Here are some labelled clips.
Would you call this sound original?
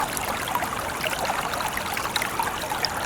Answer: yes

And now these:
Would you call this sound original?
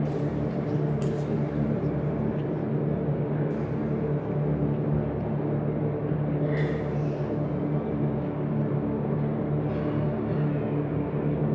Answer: yes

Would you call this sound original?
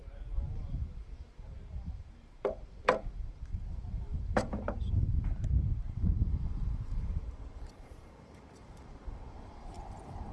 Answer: no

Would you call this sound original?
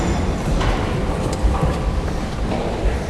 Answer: yes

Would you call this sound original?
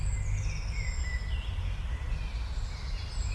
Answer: yes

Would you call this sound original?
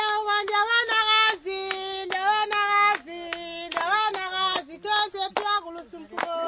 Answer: yes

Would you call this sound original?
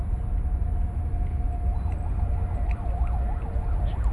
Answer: yes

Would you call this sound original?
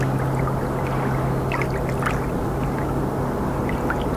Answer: yes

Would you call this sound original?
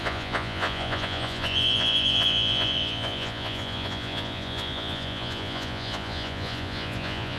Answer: no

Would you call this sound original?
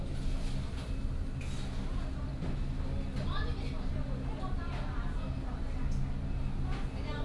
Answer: yes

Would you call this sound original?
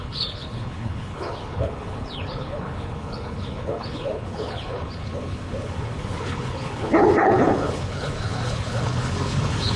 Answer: no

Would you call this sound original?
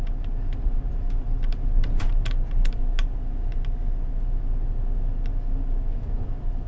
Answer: yes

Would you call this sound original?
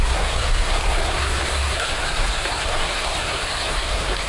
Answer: no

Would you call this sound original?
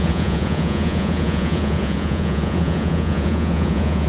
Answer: no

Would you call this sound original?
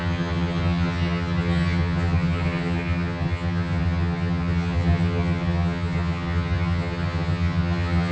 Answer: no